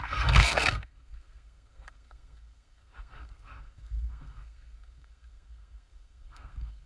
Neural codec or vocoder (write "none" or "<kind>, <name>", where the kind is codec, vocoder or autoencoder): codec, SNAC